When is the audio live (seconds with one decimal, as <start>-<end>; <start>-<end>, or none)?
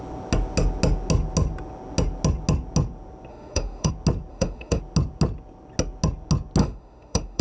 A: 0.0-3.3; 3.9-4.3; 4.8-6.6